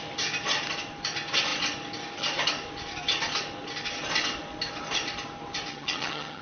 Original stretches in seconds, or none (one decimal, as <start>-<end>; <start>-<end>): 0.0-5.7